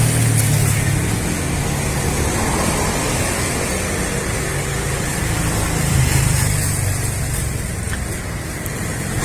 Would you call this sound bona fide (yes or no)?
yes